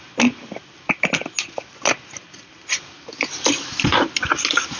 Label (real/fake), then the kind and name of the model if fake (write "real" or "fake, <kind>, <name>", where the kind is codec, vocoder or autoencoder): real